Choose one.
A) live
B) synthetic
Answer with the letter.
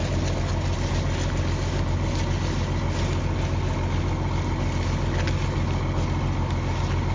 A